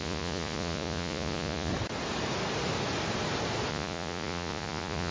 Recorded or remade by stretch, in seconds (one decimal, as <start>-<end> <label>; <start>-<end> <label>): 0.0-1.7 remade; 1.7-3.7 recorded; 3.7-5.1 remade